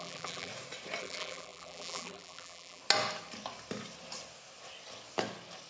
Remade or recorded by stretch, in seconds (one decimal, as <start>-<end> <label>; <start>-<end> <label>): 0.0-0.5 remade; 0.5-1.0 recorded; 1.0-2.8 remade; 2.8-5.7 recorded